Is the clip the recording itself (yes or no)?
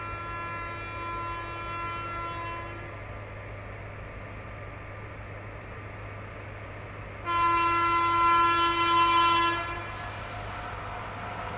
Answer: yes